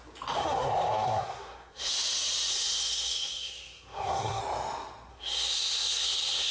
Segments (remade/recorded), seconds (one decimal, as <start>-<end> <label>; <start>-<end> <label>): 0.0-0.4 recorded; 0.4-1.9 remade; 1.9-2.5 recorded; 2.5-4.4 remade; 4.4-5.1 recorded; 5.1-6.5 remade